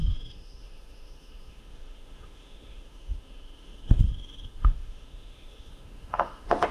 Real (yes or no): no